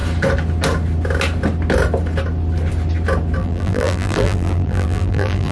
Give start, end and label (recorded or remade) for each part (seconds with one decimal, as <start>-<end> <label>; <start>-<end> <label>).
0.0-3.4 recorded; 3.4-5.5 remade